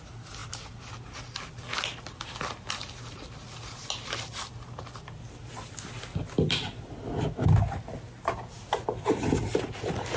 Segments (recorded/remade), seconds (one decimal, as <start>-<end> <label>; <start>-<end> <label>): 0.0-10.2 recorded